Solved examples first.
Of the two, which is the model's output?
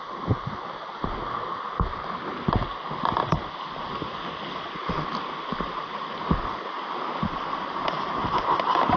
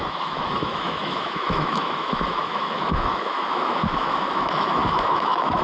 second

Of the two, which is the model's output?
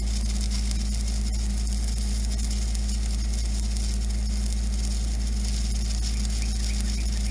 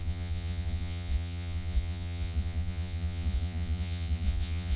second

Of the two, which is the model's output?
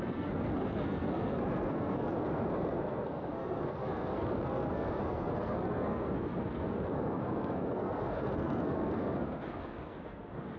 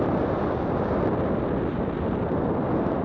first